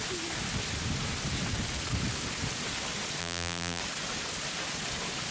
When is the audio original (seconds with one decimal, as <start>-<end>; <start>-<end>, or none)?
0.0-3.2; 3.8-5.3